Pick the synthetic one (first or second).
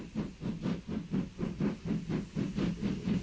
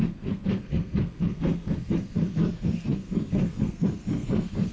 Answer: second